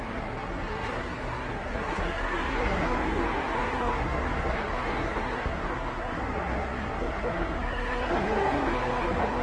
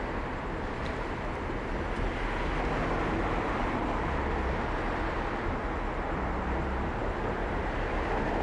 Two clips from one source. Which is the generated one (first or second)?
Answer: first